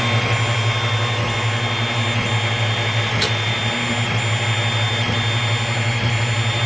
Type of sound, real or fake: real